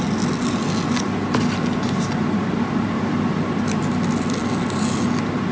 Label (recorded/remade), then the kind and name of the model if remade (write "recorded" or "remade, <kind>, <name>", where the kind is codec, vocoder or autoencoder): recorded